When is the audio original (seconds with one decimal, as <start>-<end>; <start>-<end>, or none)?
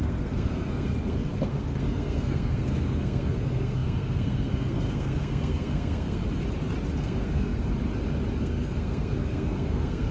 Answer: 6.2-7.0; 7.7-8.4